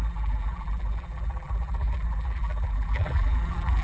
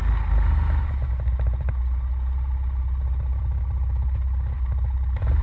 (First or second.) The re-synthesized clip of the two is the first